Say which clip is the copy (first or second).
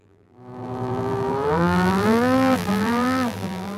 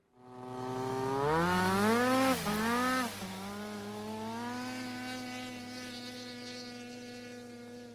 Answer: first